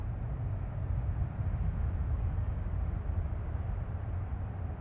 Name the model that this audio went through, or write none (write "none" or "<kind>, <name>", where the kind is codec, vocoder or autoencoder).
none